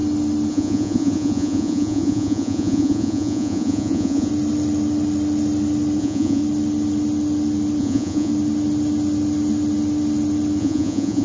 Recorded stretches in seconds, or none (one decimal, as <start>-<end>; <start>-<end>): 0.0-0.5; 4.3-6.0; 6.4-7.8; 8.3-10.6